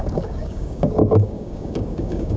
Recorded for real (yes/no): no